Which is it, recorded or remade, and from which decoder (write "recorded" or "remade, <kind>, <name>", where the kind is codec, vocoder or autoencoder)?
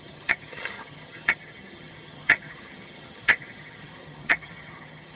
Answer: remade, vocoder, HiFi-GAN